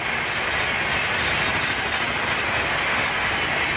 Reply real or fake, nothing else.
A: real